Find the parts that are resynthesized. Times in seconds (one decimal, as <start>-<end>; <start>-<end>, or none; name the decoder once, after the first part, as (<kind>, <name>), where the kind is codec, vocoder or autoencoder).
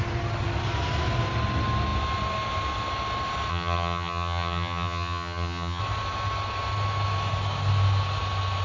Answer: 3.5-5.8 (vocoder, HiFi-GAN)